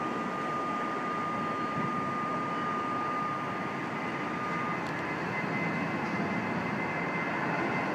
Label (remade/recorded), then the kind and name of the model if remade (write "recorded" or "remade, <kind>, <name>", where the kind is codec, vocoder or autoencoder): recorded